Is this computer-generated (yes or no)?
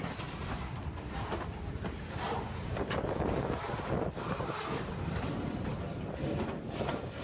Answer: no